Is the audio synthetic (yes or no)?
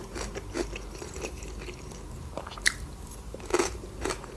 yes